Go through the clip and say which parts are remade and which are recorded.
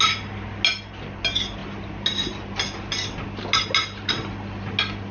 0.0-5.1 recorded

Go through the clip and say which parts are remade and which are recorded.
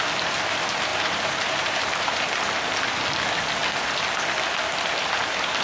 0.0-0.9 recorded; 0.9-2.4 remade; 2.4-5.6 recorded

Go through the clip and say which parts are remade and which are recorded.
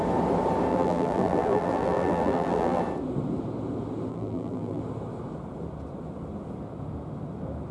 0.0-0.7 recorded; 0.7-2.8 remade; 2.8-4.1 recorded; 4.1-4.8 remade; 4.8-7.7 recorded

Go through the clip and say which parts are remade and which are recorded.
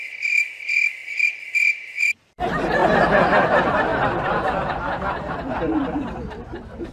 0.0-1.0 recorded; 1.0-1.6 remade; 1.6-2.8 recorded; 2.8-3.3 remade; 3.3-3.9 recorded; 3.9-6.9 remade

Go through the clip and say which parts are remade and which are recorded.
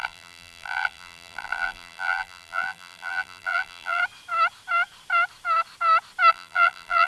0.0-4.0 remade; 4.0-6.3 recorded; 6.3-7.1 remade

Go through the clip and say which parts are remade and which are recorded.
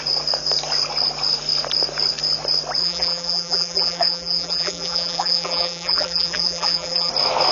0.0-2.8 recorded; 2.8-7.1 remade; 7.1-7.5 recorded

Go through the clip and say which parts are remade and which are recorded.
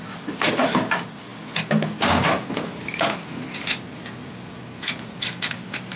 0.0-1.3 remade; 1.3-4.9 recorded; 4.9-6.0 remade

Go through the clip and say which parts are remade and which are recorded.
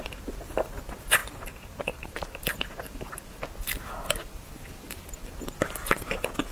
0.0-1.2 recorded; 1.2-2.4 remade; 2.4-6.5 recorded